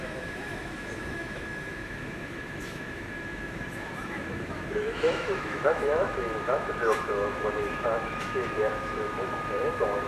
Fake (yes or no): yes